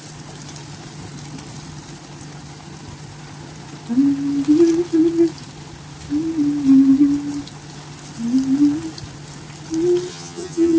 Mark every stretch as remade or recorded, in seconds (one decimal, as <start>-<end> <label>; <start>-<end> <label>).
0.0-10.1 recorded; 10.1-10.8 remade